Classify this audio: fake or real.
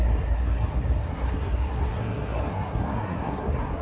fake